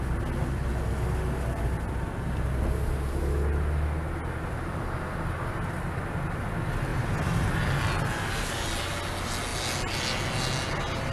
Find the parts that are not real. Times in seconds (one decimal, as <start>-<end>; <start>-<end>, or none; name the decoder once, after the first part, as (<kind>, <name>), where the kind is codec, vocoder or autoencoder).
none

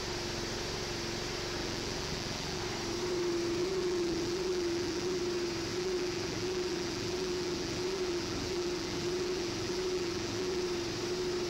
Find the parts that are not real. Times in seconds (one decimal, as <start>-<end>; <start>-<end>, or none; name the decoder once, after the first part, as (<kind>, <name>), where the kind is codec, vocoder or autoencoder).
1.6-2.6 (vocoder, BigVGAN v2); 3.6-5.2; 5.7-10.6

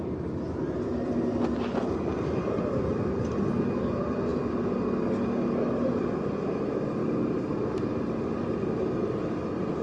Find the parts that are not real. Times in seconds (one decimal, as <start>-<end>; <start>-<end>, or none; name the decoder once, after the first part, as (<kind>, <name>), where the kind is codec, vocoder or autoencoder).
none